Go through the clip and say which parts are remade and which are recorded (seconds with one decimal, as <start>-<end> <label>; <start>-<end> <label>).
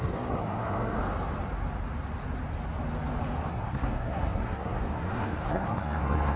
0.0-1.0 remade; 1.0-3.5 recorded; 3.5-6.4 remade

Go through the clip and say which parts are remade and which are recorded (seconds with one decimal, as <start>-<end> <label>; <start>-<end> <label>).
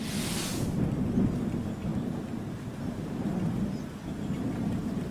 0.0-5.1 recorded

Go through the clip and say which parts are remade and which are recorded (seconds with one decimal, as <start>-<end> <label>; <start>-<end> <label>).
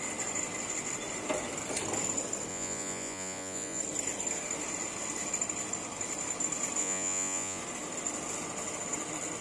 0.0-2.5 recorded; 2.5-3.8 remade; 3.8-6.8 recorded; 6.8-7.6 remade; 7.6-9.4 recorded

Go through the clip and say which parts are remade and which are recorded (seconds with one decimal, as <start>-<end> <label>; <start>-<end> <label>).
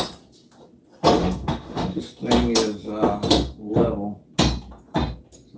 0.0-1.2 recorded; 1.2-2.0 remade; 2.0-5.6 recorded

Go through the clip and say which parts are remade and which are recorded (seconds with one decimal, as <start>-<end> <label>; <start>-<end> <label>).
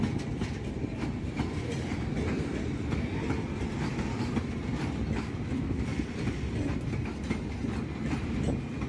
0.0-5.9 recorded; 5.9-6.5 remade; 6.5-8.9 recorded